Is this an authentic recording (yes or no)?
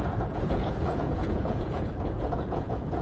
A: no